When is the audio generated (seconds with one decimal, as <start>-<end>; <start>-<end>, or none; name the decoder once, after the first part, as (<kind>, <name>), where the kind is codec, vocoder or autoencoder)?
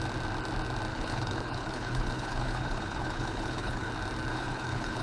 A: 0.9-3.9 (codec, HILCodec); 4.3-5.0